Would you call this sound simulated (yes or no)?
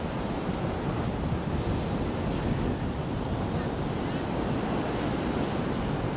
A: no